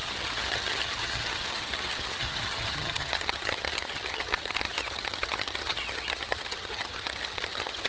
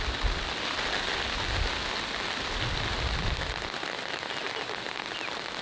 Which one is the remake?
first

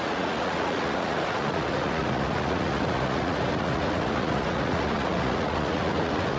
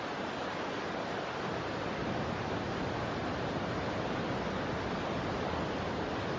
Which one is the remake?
first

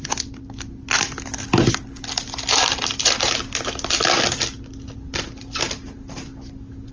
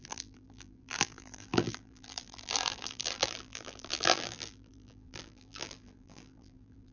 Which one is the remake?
second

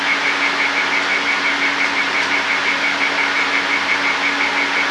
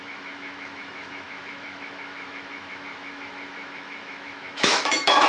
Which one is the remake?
second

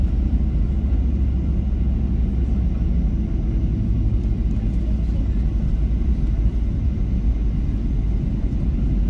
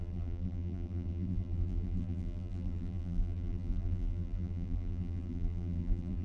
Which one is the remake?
second